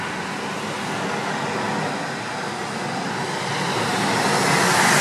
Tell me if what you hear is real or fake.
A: real